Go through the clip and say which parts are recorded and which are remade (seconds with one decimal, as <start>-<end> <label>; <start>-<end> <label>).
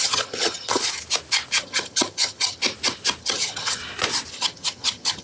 0.0-0.8 remade; 0.8-1.6 recorded; 1.6-2.6 remade; 2.6-3.2 recorded; 3.2-3.8 remade; 3.8-4.3 recorded; 4.3-5.2 remade